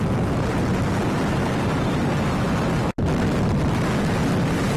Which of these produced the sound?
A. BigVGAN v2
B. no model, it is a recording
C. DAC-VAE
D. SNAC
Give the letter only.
B